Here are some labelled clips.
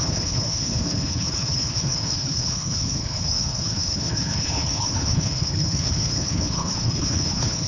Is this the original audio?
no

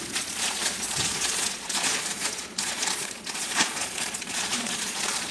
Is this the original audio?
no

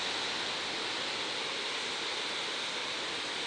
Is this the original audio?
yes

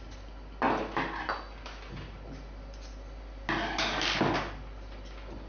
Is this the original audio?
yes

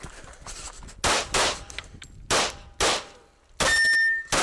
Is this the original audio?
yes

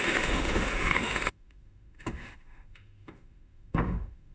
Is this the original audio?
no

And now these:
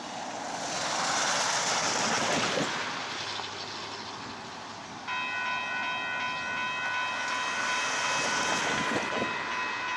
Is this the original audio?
yes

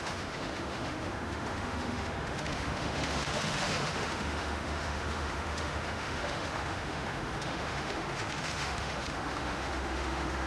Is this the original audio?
no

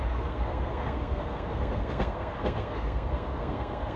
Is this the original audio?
no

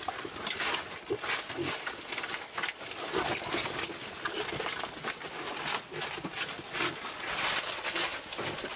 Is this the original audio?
yes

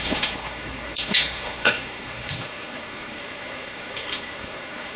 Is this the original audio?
no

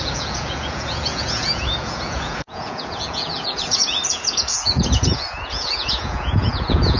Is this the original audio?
no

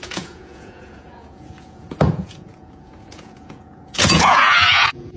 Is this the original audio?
no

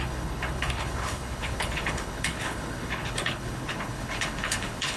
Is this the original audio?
no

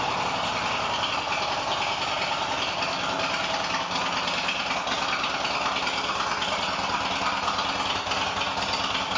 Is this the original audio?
yes